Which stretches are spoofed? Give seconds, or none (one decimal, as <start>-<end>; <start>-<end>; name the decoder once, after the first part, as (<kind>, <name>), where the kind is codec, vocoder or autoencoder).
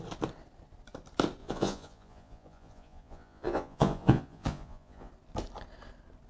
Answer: 1.4-5.1 (vocoder, Vocos)